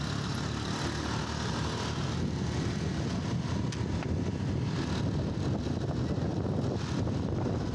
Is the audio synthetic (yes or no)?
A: no